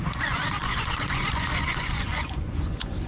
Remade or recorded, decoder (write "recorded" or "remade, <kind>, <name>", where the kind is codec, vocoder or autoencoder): remade, vocoder, Vocos